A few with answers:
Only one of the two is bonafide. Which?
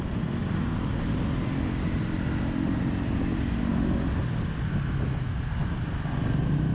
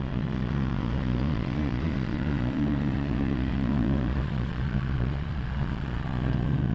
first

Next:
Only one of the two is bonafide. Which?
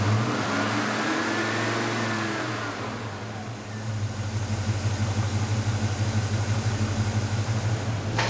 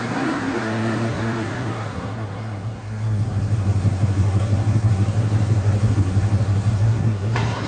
first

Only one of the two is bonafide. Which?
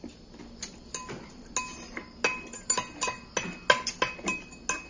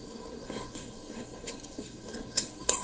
first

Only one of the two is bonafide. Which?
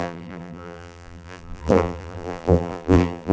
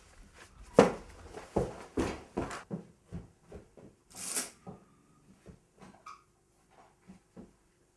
second